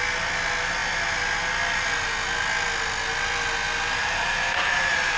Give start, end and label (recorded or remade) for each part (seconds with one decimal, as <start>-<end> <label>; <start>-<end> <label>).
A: 0.0-4.0 recorded; 4.0-5.2 remade